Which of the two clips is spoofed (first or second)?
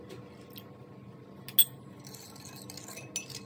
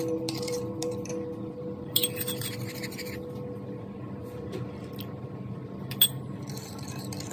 second